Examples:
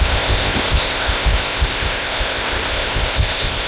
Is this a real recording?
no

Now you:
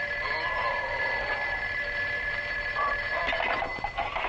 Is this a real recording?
yes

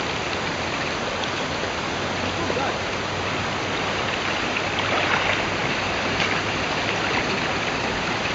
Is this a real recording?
yes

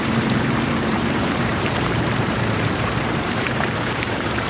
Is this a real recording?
no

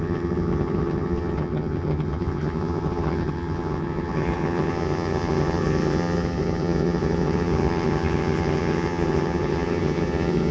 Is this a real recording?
no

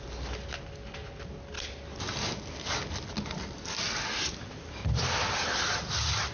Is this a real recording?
yes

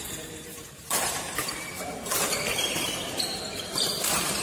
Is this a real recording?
no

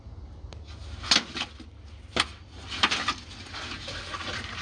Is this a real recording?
yes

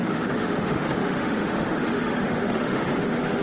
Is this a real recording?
no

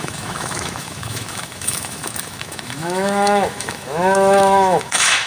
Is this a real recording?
no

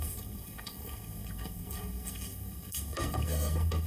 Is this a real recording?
no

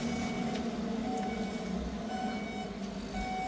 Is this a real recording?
yes